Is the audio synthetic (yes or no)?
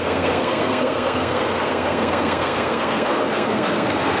yes